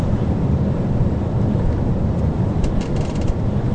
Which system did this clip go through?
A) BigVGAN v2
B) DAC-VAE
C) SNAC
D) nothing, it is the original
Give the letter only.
A